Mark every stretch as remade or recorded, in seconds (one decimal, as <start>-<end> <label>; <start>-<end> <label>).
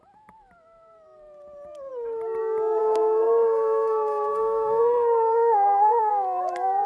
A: 0.0-2.8 recorded; 2.8-6.1 remade; 6.1-6.9 recorded